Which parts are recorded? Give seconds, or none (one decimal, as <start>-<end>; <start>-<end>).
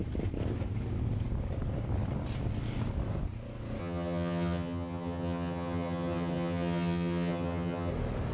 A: 0.0-3.8; 7.9-8.3